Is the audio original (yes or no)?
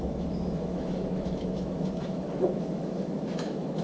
no